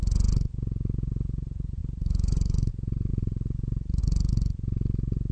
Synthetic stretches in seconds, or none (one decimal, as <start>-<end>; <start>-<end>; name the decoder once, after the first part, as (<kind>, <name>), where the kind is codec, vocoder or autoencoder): 1.8-2.7 (vocoder, BigVGAN v2); 3.1-4.0